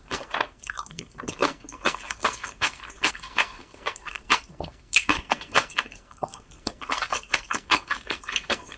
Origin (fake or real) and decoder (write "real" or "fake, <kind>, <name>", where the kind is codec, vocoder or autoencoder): fake, codec, SNAC